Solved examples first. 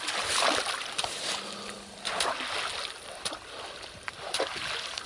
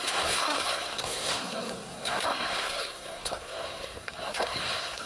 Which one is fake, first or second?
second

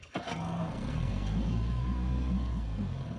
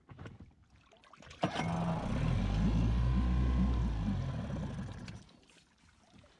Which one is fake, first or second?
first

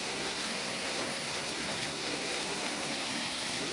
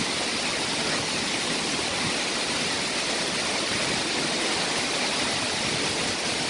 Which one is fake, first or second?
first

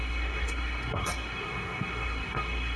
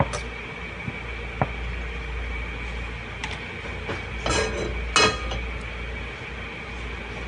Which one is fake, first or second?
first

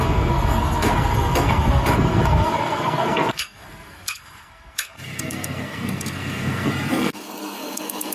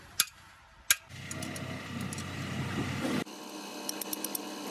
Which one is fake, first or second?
first